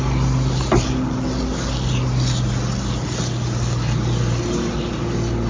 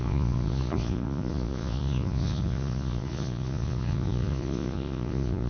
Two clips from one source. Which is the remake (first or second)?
second